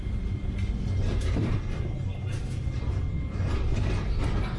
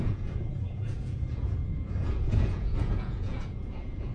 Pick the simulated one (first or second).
second